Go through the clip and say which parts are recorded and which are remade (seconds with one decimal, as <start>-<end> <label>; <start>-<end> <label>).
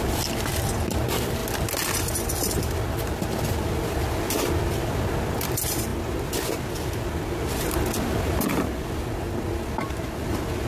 0.0-10.7 recorded